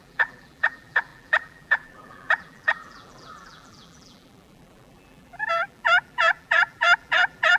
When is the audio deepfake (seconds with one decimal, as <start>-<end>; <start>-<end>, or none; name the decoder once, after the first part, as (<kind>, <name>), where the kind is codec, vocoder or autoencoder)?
0.0-7.6 (vocoder, BigVGAN v2)